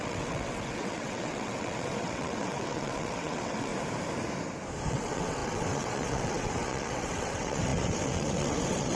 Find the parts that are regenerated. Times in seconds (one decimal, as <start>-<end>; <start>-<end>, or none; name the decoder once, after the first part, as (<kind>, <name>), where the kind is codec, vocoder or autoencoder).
0.0-3.7 (vocoder, WaveNeXt); 4.9-9.0